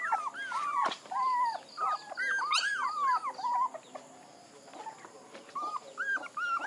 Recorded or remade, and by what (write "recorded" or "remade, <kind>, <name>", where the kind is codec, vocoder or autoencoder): recorded